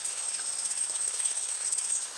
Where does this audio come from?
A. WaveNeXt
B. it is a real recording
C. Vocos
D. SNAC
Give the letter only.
D